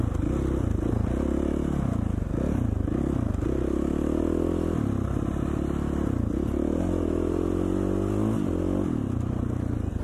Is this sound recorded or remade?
recorded